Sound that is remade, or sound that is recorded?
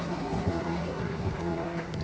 remade